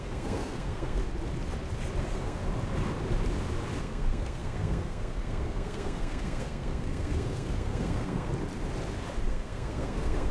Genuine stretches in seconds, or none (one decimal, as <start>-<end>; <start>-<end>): 1.0-2.0; 2.4-3.8; 8.3-9.3